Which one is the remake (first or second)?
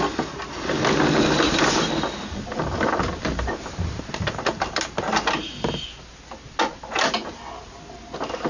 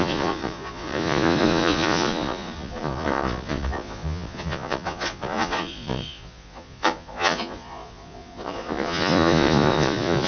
second